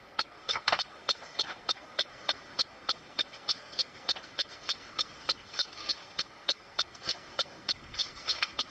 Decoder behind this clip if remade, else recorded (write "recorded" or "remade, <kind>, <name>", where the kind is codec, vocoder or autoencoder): remade, codec, SNAC